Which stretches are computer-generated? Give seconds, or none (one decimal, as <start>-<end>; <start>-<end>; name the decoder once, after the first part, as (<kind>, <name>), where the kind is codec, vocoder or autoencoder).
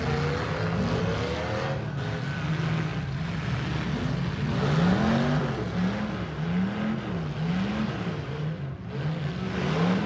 none